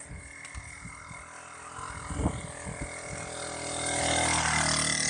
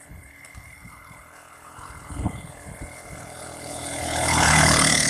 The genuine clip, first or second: first